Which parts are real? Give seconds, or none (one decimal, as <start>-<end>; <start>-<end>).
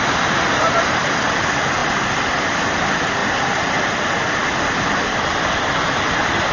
0.0-3.2; 3.9-6.5